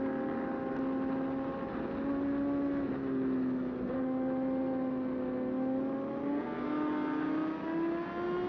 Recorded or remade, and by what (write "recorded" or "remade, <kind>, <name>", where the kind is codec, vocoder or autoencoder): recorded